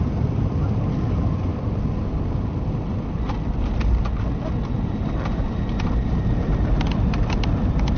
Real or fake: real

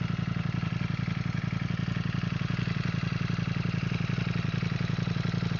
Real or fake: real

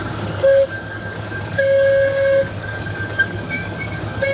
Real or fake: fake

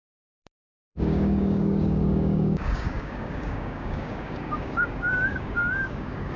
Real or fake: fake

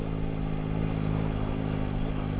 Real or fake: real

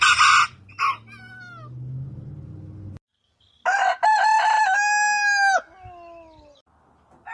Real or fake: real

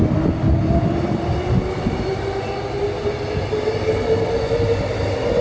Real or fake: real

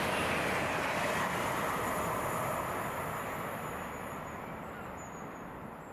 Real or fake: real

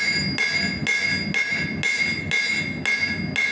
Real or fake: real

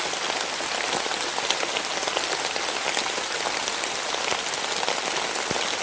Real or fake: real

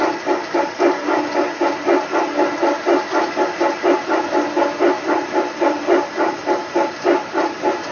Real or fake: real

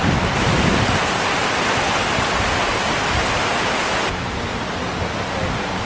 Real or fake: real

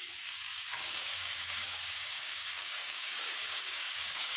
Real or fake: fake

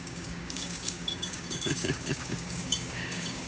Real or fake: fake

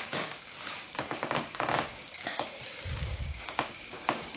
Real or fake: fake